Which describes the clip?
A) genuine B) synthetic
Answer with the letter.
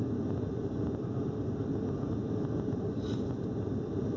A